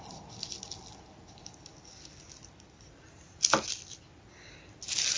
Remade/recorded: recorded